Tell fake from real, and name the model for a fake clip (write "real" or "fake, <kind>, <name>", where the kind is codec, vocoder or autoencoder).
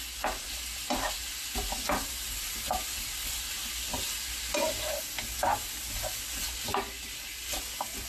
real